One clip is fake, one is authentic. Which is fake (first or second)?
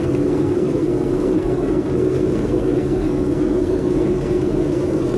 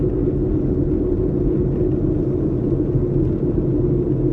first